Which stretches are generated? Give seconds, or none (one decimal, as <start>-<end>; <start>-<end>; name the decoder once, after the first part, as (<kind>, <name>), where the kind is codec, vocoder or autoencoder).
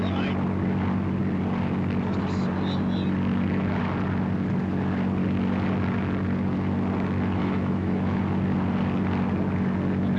7.4-8.2 (autoencoder, DAC-VAE)